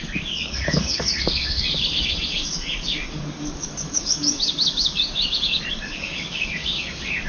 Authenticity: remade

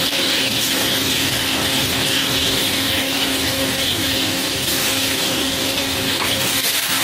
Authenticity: remade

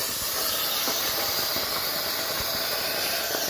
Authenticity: recorded